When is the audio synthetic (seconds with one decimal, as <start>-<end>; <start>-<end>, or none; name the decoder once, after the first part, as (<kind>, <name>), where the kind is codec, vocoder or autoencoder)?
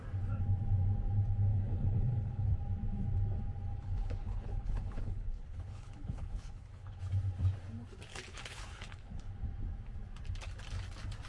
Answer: 1.5-2.6 (codec, HILCodec); 3.7-7.0; 8.1-9.3